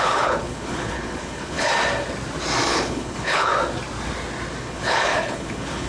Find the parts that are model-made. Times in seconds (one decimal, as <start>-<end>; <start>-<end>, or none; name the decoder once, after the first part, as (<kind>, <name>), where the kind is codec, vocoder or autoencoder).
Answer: 0.0-1.7 (codec, HILCodec); 2.7-3.5; 4.6-5.9